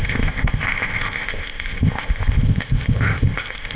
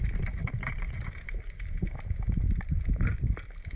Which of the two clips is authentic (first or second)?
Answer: second